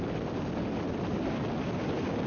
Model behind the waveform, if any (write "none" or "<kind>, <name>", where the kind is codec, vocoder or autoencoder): none